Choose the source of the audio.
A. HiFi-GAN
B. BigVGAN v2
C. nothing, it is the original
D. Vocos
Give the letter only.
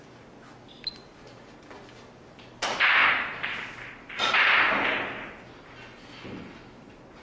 C